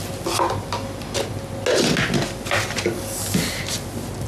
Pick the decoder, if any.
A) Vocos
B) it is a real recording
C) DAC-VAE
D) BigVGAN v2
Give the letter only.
B